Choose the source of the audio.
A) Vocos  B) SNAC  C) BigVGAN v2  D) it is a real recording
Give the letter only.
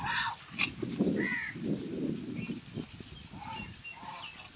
D